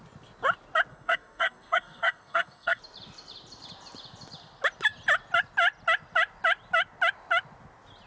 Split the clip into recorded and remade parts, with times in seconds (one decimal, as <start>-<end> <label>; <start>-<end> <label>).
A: 0.0-0.9 recorded; 0.9-2.8 remade; 2.8-8.1 recorded